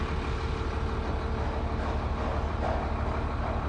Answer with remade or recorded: recorded